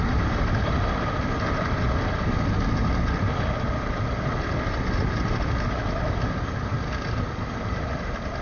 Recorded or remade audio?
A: recorded